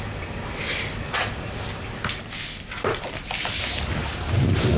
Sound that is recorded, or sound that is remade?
recorded